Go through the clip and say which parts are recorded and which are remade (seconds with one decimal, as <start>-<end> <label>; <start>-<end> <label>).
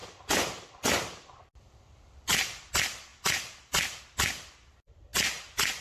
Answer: 0.0-2.7 remade; 2.7-3.1 recorded; 3.1-4.0 remade; 4.0-5.8 recorded